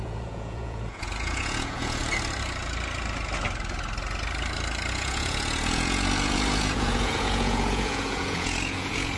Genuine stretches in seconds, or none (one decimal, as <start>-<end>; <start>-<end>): 2.0-4.9